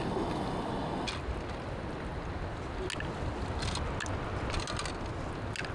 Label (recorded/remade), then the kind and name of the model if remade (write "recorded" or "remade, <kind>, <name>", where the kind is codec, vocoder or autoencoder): recorded